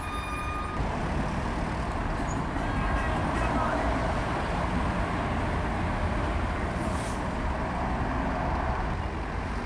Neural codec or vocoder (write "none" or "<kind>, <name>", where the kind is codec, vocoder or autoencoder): none